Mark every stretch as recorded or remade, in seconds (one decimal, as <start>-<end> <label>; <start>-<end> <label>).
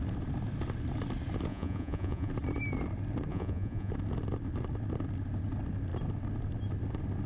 0.0-1.5 recorded; 1.5-2.3 remade; 2.3-3.3 recorded; 3.3-3.9 remade; 3.9-7.3 recorded